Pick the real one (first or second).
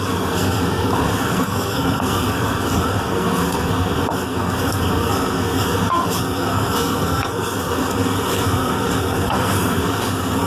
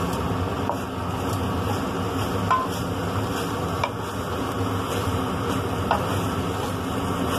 second